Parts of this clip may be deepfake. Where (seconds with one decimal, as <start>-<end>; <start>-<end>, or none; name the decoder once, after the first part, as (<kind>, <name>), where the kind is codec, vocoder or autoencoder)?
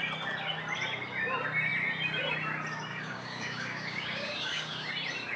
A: 2.9-4.9 (codec, DAC)